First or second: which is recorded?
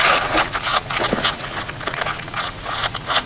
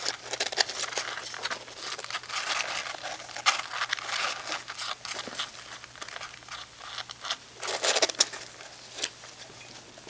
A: second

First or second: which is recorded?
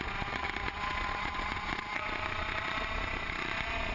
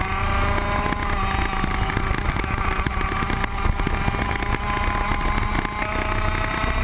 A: second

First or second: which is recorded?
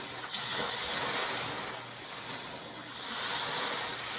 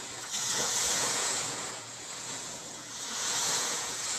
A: first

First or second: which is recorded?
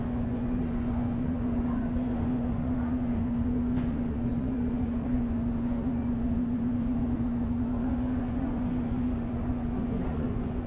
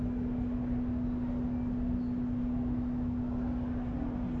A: second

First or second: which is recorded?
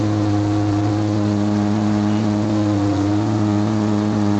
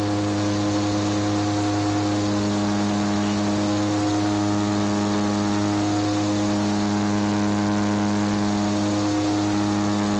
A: second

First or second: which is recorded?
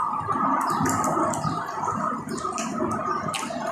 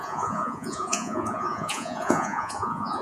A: first